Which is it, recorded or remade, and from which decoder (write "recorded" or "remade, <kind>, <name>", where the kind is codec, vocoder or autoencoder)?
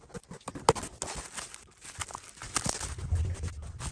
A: recorded